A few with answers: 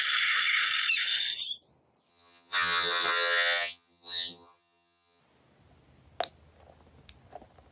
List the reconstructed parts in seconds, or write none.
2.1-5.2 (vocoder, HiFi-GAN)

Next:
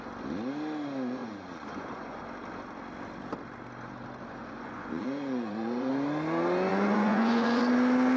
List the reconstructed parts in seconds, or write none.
1.2-2.2 (vocoder, Vocos); 4.4-5.9; 6.7-7.6

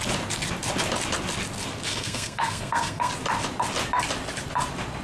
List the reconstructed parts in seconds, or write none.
1.9-3.1 (codec, SNAC)

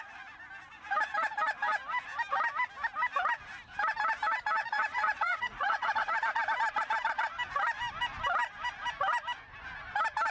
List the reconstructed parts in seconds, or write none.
4.6-6.1 (vocoder, Vocos)

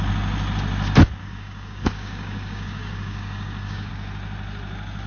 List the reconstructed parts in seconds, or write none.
1.2-3.9 (codec, DAC)

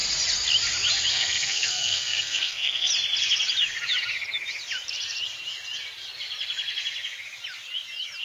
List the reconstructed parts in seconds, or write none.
1.1-2.9 (codec, SNAC)